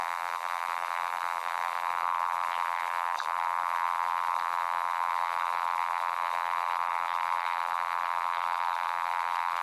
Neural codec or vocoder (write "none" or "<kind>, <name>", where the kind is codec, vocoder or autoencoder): vocoder, BigVGAN v2